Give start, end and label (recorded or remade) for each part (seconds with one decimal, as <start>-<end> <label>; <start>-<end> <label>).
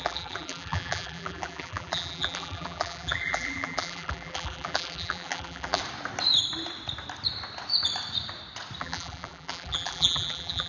0.0-5.8 remade; 5.8-8.8 recorded; 8.8-10.7 remade